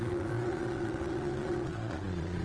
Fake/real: fake